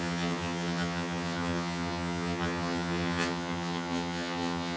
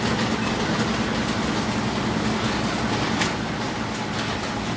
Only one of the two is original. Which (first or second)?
second